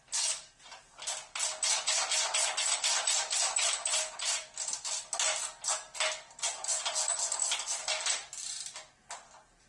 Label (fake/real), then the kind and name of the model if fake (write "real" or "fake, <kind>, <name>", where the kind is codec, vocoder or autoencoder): real